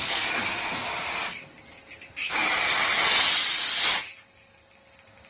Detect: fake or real real